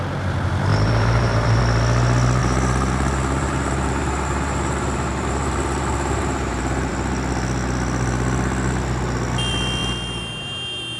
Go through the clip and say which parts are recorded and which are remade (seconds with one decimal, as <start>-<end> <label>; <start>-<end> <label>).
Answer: 0.0-0.7 recorded; 0.7-1.6 remade; 1.6-2.4 recorded; 2.4-6.9 remade; 6.9-11.0 recorded